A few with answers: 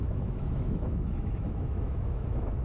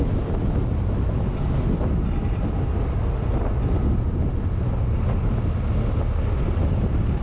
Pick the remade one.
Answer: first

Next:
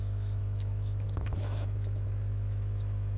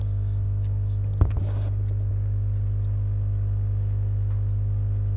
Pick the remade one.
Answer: first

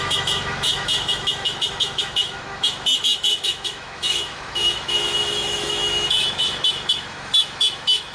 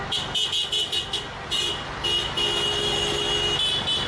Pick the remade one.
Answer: first